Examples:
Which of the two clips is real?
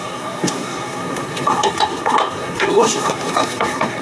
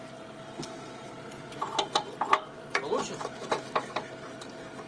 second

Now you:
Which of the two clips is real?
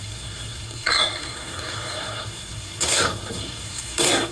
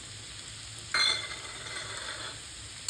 second